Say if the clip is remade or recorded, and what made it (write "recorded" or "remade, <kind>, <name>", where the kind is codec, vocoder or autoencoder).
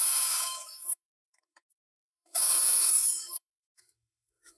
remade, autoencoder, DAC-VAE